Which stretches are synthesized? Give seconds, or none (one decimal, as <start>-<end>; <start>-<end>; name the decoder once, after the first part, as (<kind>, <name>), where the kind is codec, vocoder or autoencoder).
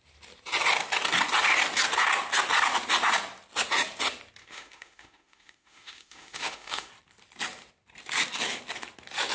4.4-6.9 (autoencoder, DAC-VAE)